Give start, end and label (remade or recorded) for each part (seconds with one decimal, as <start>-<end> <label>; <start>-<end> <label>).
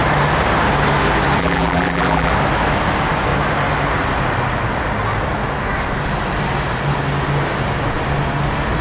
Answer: 0.0-1.4 recorded; 1.4-2.3 remade; 2.3-8.8 recorded